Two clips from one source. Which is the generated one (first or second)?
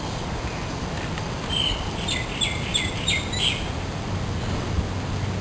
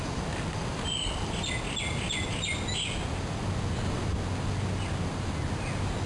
first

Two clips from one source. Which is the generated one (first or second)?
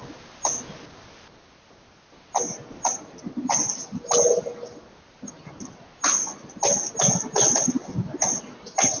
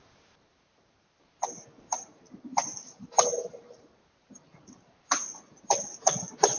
second